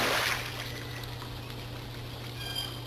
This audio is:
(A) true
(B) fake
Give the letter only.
A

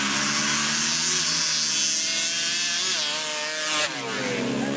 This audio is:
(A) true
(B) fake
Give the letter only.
A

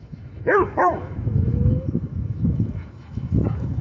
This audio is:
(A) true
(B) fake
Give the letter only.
B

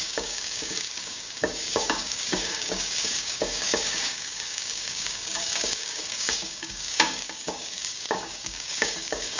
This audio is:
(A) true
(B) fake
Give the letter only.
B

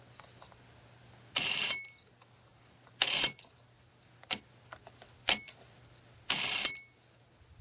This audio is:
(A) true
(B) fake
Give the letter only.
A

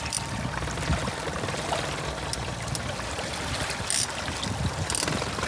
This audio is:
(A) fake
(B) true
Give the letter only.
B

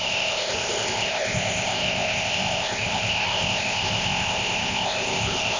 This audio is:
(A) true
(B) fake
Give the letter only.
B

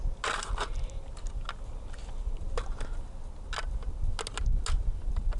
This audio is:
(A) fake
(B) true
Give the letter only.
B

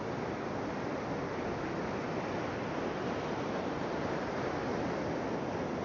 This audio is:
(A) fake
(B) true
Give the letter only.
B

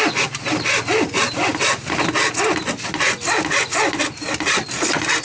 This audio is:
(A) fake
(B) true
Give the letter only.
B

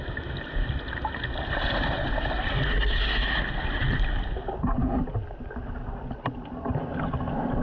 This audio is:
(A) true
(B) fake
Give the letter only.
A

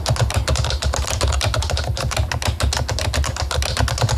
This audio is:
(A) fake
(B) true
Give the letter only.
B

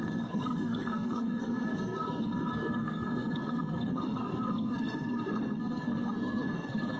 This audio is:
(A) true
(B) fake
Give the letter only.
B